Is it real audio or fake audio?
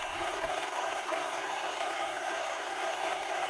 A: fake